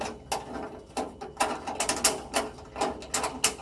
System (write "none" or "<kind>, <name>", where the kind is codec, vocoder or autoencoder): none